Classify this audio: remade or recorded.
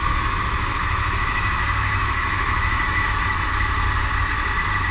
remade